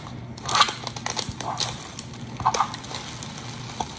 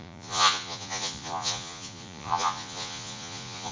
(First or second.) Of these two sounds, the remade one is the second